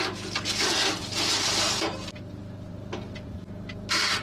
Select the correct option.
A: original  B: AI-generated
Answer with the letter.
A